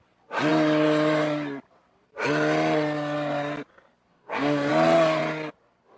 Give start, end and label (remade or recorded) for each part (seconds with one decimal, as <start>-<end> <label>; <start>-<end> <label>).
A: 0.0-4.1 recorded; 4.1-4.7 remade; 4.7-6.0 recorded